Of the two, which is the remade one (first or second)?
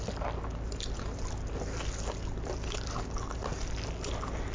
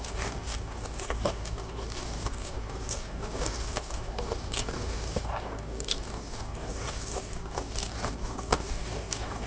second